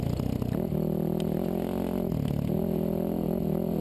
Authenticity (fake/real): real